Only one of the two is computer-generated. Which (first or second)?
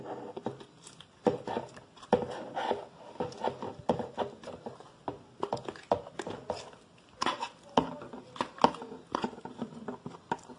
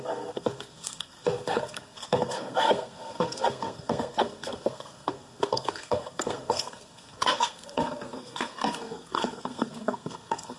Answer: second